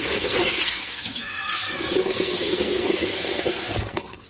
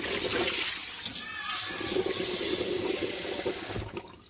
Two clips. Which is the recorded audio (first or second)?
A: second